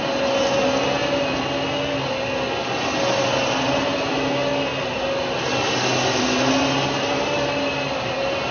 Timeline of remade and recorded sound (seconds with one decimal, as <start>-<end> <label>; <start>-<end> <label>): 0.0-8.5 recorded